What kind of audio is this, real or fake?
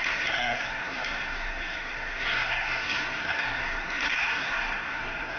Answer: fake